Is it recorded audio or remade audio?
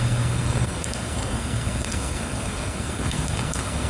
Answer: remade